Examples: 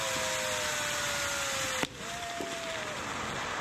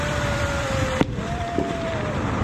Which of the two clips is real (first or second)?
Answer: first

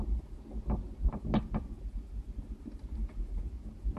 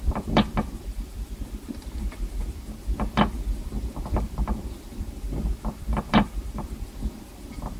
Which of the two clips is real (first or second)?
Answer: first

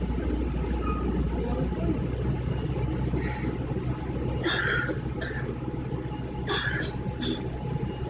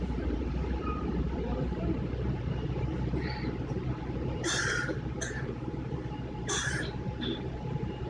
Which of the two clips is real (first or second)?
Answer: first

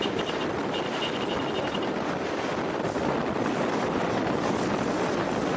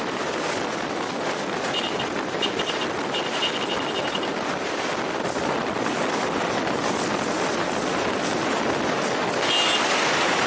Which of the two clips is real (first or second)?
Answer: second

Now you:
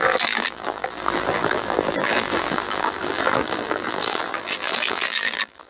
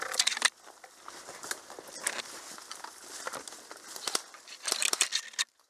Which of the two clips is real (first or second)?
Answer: second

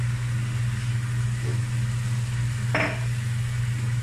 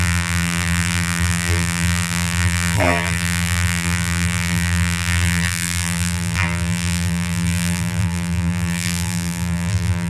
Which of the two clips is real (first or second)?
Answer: first